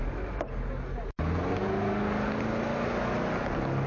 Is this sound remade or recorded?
recorded